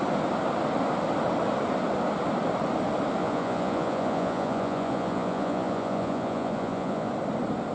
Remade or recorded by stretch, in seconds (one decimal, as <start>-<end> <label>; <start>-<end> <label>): 0.0-3.2 recorded; 3.2-7.1 remade; 7.1-7.7 recorded